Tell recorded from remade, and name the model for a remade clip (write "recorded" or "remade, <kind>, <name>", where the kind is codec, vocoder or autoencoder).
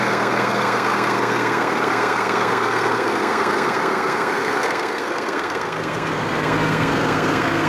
remade, codec, SNAC